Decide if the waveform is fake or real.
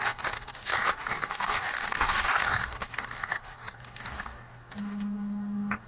fake